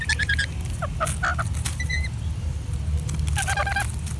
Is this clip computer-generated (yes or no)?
no